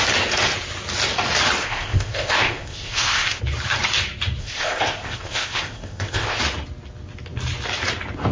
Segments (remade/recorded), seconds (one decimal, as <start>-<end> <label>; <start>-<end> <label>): 0.0-1.6 recorded; 1.6-3.4 remade; 3.4-4.4 recorded; 4.4-6.4 remade; 6.4-8.3 recorded